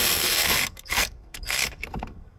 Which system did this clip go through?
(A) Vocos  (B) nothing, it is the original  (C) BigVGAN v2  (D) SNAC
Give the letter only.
D